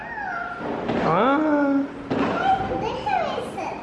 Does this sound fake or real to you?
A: real